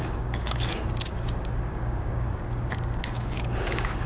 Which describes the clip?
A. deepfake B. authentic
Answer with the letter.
A